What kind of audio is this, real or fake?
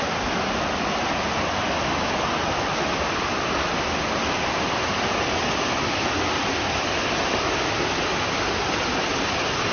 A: real